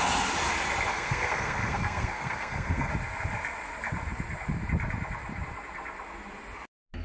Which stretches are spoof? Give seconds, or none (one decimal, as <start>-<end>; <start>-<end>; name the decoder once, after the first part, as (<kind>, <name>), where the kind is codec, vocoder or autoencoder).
0.9-2.9 (codec, SNAC)